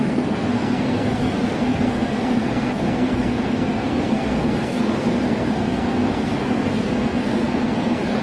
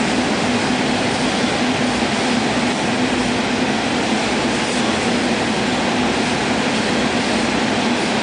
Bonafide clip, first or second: second